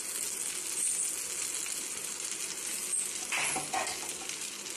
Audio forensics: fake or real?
real